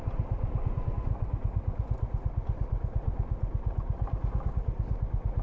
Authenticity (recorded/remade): recorded